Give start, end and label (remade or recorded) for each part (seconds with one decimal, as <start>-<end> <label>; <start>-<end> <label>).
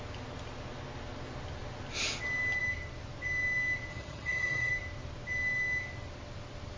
0.0-3.9 recorded; 3.9-4.7 remade; 4.7-6.8 recorded